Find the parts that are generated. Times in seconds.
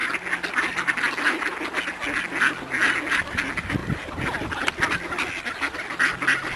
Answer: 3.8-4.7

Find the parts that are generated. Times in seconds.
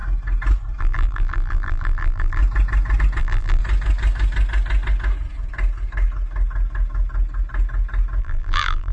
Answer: 0.8-2.4; 3.2-3.6; 8.2-8.9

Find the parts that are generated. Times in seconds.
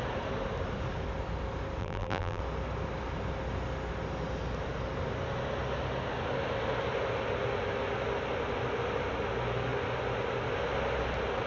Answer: 1.8-2.4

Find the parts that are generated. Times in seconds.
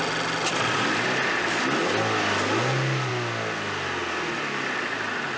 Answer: none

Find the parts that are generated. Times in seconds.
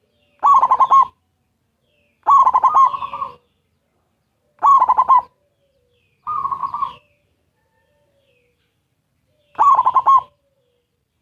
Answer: 6.6-9.4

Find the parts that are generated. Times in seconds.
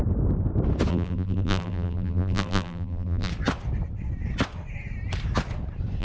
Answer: 0.9-3.3